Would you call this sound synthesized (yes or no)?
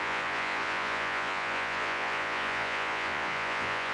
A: yes